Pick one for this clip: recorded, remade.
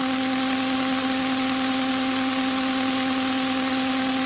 recorded